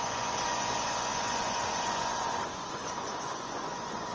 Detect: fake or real fake